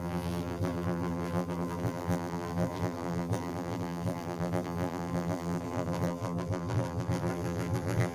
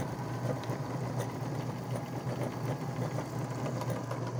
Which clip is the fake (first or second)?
first